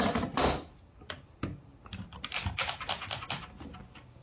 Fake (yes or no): no